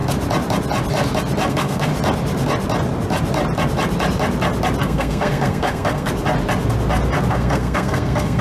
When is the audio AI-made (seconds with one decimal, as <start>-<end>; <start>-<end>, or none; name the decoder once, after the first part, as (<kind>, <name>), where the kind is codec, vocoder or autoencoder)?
1.5-1.9 (codec, SNAC); 4.8-6.1; 7.3-8.4